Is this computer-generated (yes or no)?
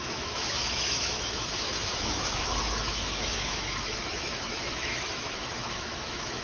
yes